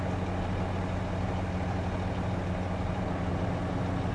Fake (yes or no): no